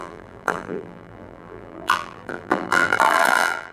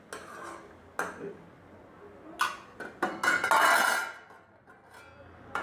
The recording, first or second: second